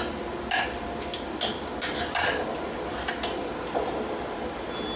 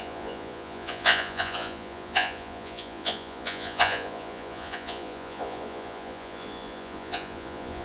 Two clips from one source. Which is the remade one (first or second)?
second